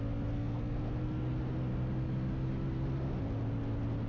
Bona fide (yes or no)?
yes